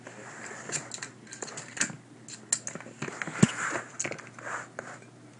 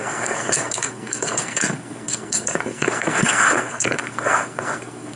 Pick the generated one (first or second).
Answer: second